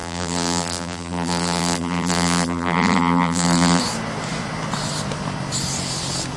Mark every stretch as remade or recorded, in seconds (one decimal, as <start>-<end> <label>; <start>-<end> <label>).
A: 0.0-3.8 remade; 3.8-6.4 recorded